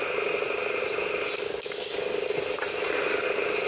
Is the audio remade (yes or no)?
no